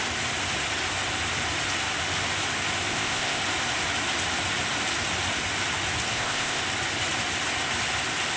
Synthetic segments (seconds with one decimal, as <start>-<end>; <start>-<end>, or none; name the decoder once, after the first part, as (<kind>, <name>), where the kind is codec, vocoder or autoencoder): 2.9-3.4 (codec, ZipCodec); 6.1-6.6